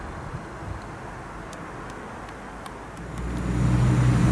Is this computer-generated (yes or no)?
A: no